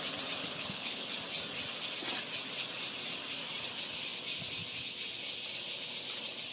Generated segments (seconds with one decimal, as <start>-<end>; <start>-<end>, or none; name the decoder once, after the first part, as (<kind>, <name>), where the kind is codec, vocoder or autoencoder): 0.4-1.1 (codec, HILCodec)